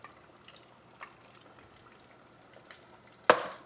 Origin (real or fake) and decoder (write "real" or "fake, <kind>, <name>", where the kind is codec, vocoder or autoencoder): real